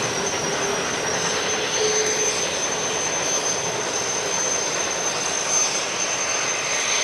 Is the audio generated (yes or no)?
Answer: no